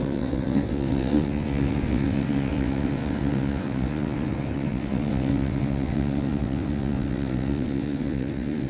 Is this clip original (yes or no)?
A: no